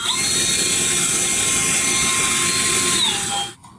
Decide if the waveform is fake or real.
real